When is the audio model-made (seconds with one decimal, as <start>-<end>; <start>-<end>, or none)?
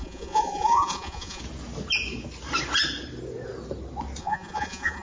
0.0-1.4; 4.2-5.0